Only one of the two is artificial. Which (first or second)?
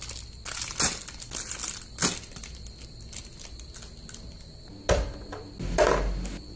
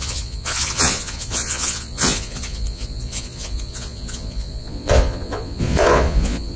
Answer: second